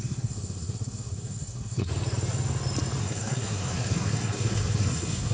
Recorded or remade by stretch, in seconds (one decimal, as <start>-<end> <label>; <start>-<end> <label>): 0.0-1.9 remade; 1.9-3.0 recorded; 3.0-5.3 remade